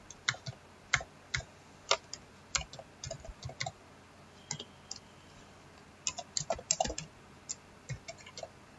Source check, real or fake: real